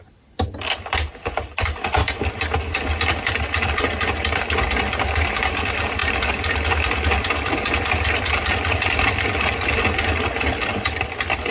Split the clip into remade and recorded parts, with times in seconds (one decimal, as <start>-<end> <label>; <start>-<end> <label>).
0.0-11.5 recorded